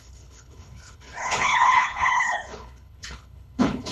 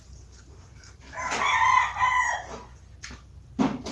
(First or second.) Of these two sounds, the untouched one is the second